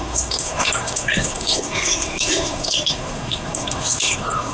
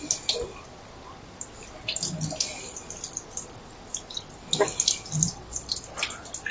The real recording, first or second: second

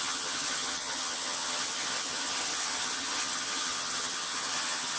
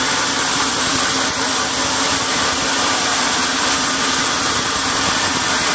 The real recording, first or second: second